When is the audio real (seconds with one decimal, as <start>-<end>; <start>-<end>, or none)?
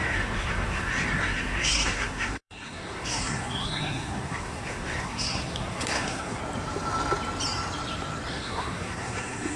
6.4-8.3